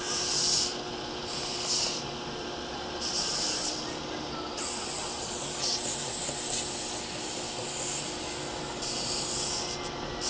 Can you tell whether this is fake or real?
real